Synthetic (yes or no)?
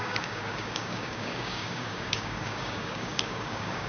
yes